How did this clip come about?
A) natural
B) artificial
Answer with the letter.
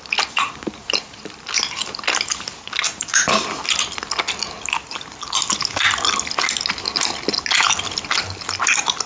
A